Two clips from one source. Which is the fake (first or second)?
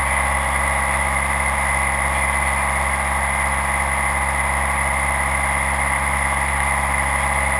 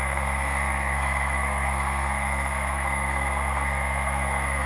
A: second